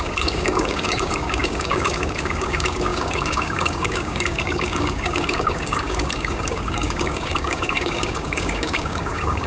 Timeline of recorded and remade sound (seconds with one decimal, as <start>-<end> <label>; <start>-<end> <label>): 0.0-9.5 remade